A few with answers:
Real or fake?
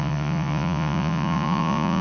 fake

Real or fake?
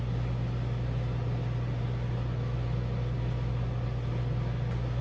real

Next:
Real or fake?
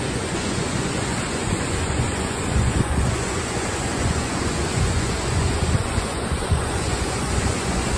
fake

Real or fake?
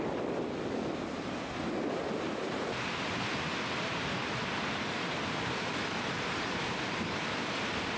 real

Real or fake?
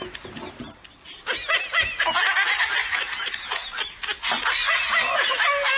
real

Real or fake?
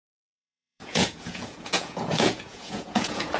fake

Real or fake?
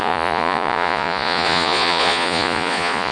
fake